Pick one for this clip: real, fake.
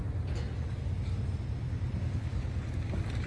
real